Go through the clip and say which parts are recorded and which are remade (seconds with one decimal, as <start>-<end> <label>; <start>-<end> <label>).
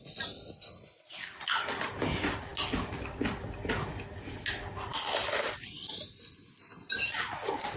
0.0-4.9 recorded; 4.9-6.6 remade; 6.6-7.8 recorded